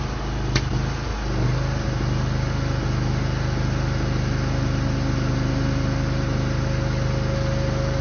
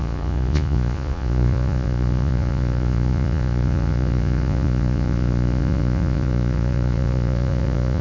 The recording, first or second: first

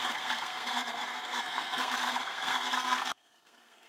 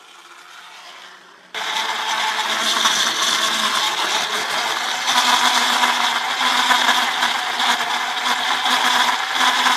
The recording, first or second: second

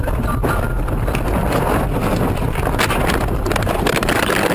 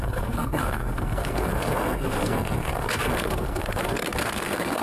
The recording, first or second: first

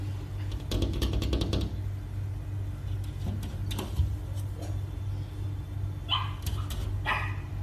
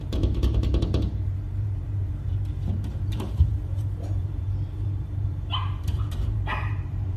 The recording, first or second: first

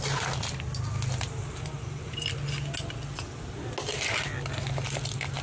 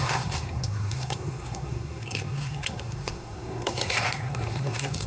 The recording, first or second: first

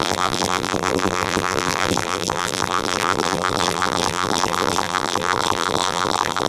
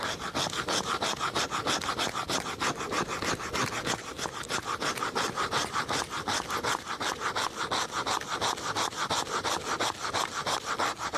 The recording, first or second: second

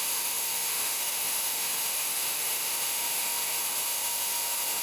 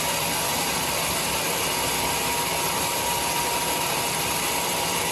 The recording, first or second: second